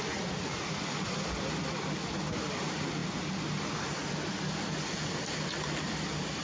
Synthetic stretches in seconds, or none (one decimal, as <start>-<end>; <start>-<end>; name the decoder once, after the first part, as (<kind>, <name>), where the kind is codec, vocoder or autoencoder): none